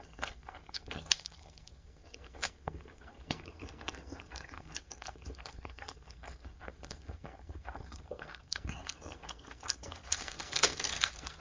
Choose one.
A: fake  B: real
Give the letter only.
A